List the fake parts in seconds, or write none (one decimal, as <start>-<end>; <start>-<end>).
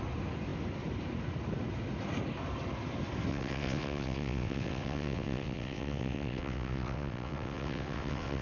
3.3-8.4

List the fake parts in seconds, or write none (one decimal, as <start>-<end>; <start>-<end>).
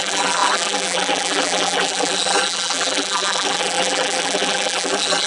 0.0-5.3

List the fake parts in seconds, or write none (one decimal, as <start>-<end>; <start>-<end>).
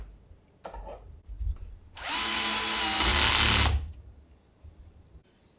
none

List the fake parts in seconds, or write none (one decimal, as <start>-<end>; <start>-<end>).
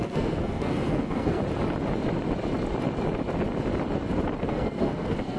0.0-1.4; 4.5-5.4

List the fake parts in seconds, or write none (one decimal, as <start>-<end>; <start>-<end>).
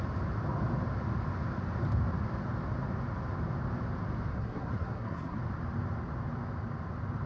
4.3-5.4